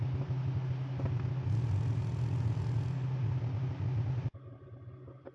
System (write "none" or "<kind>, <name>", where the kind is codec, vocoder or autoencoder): none